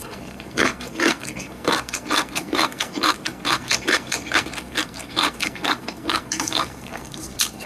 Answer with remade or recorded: remade